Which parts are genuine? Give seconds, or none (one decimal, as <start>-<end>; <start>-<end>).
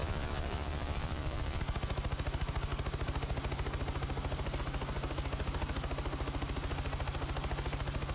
1.6-8.1